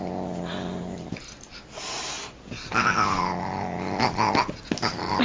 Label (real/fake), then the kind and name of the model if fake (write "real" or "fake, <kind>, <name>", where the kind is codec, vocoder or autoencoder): real